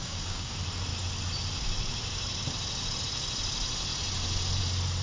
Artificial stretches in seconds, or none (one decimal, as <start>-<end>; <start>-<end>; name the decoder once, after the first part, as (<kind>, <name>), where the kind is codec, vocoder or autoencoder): 0.0-0.5 (codec, DAC)